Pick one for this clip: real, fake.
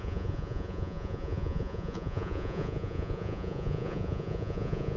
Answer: fake